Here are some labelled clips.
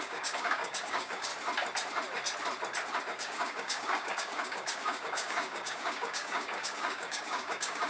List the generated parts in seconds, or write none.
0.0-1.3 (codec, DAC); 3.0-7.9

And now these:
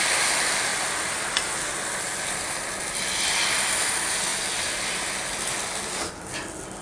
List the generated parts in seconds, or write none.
none

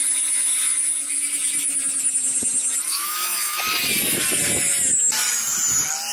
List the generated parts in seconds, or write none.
2.9-3.6 (autoencoder, DAC-VAE)

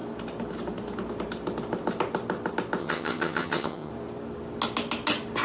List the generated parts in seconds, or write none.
2.8-3.9 (vocoder, HiFi-GAN)

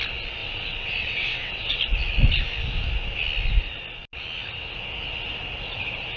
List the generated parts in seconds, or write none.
0.4-1.8 (vocoder, WaveNeXt)

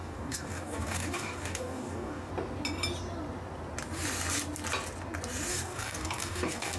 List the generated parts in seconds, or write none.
0.0-2.3 (codec, DAC); 5.5-6.8